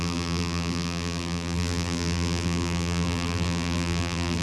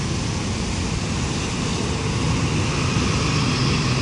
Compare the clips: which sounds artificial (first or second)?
first